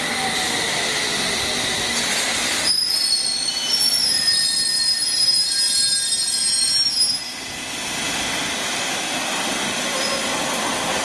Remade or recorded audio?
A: recorded